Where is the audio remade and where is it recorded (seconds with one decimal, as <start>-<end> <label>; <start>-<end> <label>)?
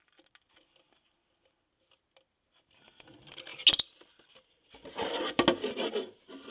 0.0-6.5 recorded